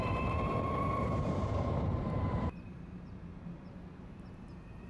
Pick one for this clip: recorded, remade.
remade